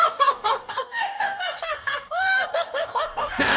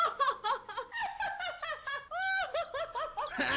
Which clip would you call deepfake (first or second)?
first